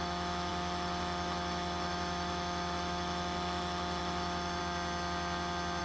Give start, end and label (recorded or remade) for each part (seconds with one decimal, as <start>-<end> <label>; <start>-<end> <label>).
0.0-4.6 remade; 4.6-5.8 recorded